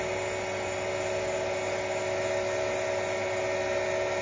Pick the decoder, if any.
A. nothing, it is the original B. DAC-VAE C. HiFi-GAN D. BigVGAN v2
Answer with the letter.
A